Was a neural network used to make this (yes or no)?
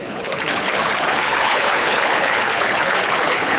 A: yes